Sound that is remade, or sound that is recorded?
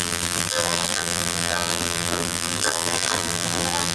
remade